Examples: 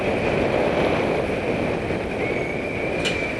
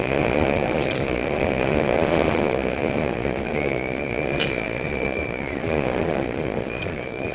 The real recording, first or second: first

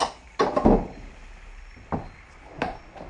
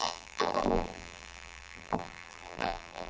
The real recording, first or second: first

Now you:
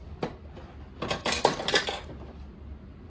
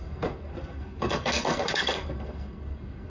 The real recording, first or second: first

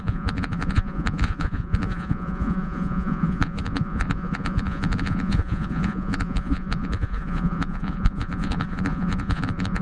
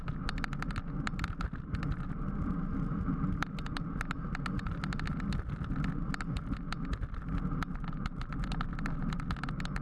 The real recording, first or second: second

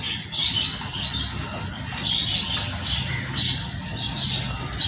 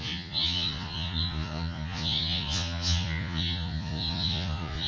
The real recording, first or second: first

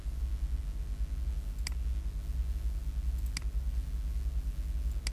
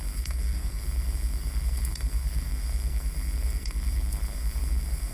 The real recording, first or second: first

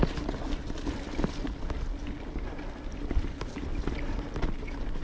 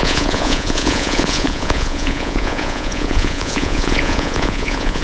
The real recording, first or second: first